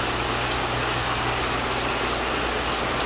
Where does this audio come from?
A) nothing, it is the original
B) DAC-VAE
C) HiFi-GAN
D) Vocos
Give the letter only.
A